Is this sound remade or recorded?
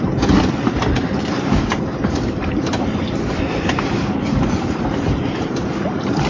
recorded